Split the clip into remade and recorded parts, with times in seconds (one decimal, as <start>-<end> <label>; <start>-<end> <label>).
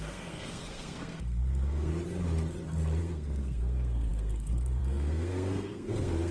0.0-1.9 remade; 1.9-3.0 recorded; 3.0-6.3 remade